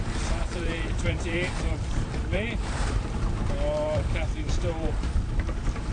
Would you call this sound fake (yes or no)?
yes